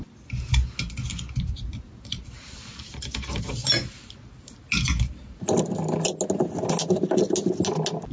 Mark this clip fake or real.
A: real